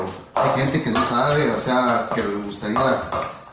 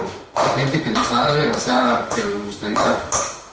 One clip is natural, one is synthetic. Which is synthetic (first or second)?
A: second